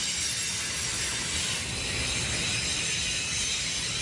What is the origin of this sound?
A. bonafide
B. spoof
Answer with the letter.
A